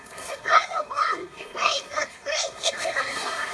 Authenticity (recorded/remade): remade